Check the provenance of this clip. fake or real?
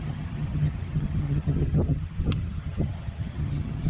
fake